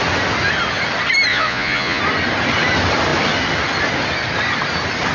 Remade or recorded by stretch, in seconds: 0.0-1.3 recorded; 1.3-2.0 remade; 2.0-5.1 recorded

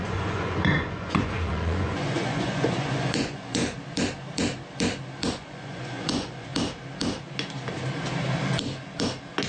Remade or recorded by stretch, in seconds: 0.0-3.6 remade; 3.6-5.3 recorded; 5.3-6.5 remade; 6.5-9.5 recorded